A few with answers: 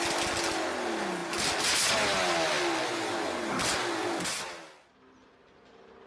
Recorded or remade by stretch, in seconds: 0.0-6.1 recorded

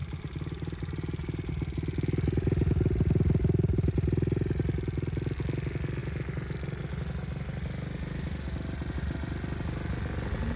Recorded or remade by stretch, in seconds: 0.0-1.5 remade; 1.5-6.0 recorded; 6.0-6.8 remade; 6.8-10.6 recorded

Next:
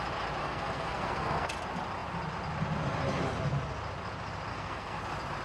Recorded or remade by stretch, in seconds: 0.0-0.4 recorded; 0.4-1.5 remade; 1.5-4.5 recorded; 4.5-5.0 remade; 5.0-5.4 recorded

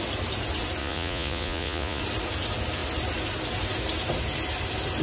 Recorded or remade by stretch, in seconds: 0.0-0.8 recorded; 0.8-2.0 remade; 2.0-5.0 recorded

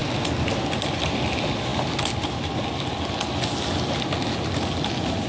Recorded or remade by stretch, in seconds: 0.0-5.3 recorded

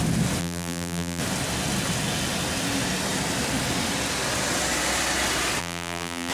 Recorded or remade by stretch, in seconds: 0.0-0.4 recorded; 0.4-1.2 remade; 1.2-5.6 recorded; 5.6-6.3 remade

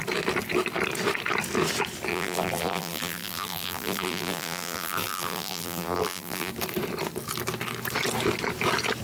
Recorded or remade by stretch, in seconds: 0.0-2.1 recorded; 2.1-6.5 remade; 6.5-9.0 recorded

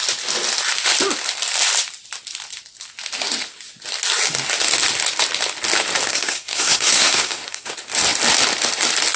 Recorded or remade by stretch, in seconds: 0.0-6.1 recorded; 6.1-7.7 remade; 7.7-9.2 recorded